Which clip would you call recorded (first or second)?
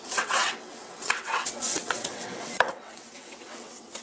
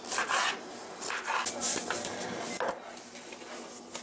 second